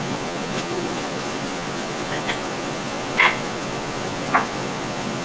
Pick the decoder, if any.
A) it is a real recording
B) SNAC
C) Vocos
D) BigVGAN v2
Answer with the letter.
C